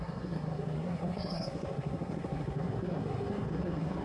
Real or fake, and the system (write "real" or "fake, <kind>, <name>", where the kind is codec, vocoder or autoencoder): fake, codec, SNAC